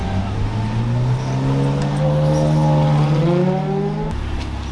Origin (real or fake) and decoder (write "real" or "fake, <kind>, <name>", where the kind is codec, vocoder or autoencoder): real